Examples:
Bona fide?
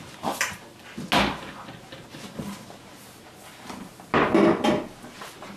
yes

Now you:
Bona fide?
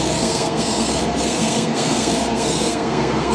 no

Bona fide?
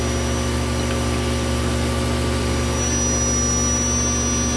yes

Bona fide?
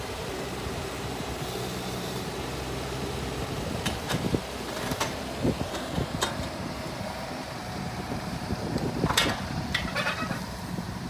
no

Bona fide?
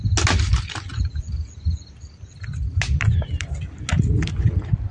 yes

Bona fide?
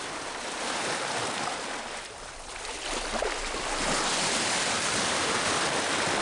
yes